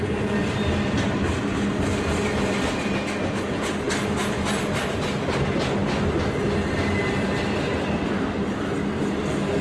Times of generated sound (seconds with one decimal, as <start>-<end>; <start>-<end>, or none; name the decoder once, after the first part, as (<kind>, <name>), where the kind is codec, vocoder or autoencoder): none